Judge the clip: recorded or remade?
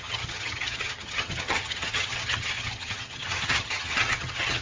remade